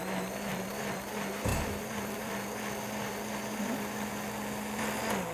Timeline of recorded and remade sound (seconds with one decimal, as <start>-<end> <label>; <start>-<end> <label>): 0.0-0.5 recorded; 0.5-1.1 remade; 1.1-1.5 recorded; 1.5-2.3 remade; 2.3-5.3 recorded

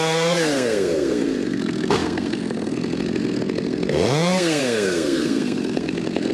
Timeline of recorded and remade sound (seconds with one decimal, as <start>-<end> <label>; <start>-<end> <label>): 0.0-6.3 remade